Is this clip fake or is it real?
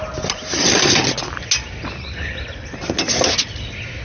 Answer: real